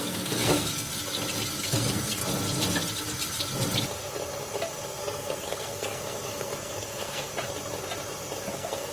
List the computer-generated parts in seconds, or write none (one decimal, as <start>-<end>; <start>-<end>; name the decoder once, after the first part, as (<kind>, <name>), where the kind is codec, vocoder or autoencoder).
0.0-0.9 (codec, SNAC); 1.6-2.2; 5.0-7.3; 8.5-8.9